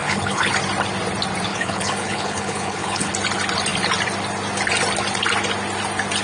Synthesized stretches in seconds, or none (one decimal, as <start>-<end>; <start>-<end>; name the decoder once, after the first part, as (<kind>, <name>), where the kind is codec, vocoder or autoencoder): 0.0-0.5 (codec, HILCodec); 1.5-3.1